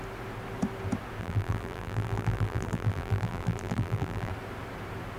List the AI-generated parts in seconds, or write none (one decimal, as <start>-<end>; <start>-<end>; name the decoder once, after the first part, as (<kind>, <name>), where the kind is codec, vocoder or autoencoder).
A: 1.2-4.3 (vocoder, BigVGAN v2)